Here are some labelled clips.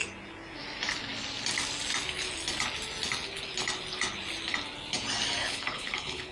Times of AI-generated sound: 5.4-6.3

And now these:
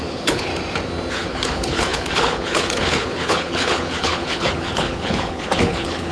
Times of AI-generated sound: 0.0-0.5; 1.1-6.1

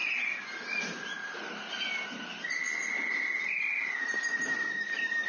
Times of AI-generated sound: none

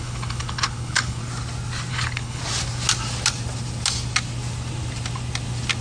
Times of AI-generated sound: 0.0-1.2; 1.9-2.4

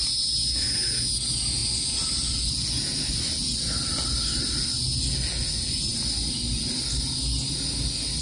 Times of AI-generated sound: none

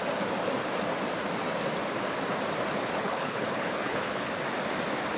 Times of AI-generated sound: 2.8-4.4

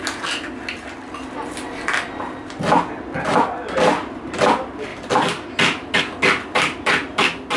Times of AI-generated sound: none